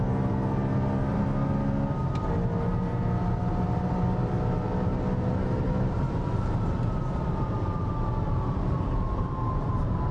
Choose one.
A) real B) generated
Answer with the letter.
A